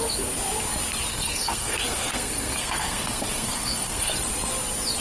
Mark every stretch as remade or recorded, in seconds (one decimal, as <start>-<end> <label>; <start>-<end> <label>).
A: 0.0-1.1 recorded; 1.1-4.1 remade; 4.1-5.0 recorded